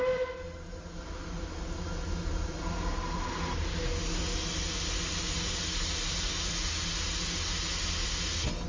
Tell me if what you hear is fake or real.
real